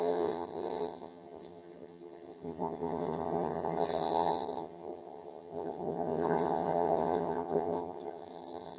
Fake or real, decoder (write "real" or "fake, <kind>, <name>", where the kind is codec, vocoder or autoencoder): fake, vocoder, HiFi-GAN